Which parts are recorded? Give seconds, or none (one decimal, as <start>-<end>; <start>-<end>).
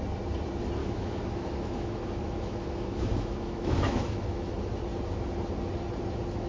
0.0-0.8; 4.5-6.5